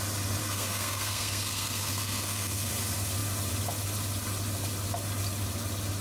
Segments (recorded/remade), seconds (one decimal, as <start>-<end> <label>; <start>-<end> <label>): 0.0-0.4 recorded; 0.4-2.7 remade; 2.7-6.0 recorded